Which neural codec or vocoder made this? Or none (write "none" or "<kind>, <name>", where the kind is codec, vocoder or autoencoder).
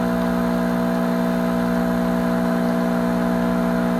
none